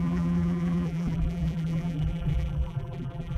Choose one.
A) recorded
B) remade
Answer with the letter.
B